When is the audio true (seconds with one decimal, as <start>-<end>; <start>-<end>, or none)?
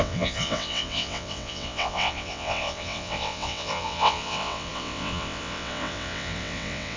none